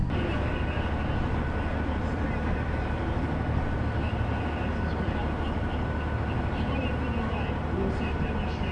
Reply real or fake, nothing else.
real